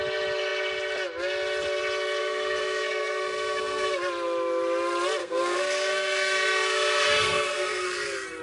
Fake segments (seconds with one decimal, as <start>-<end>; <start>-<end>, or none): 2.2-4.0; 5.2-8.4